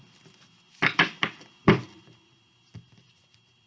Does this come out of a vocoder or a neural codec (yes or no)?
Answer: yes